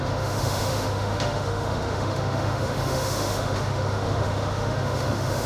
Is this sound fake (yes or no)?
yes